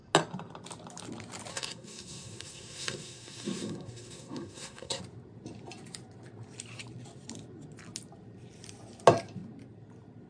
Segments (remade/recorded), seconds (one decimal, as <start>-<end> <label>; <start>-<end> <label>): 0.0-1.5 recorded; 1.5-5.0 remade; 5.0-10.3 recorded